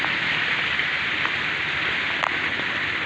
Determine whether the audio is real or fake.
real